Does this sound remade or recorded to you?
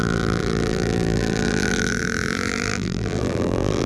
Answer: remade